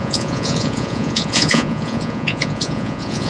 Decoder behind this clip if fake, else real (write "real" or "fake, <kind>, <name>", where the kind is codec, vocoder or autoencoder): fake, vocoder, Vocos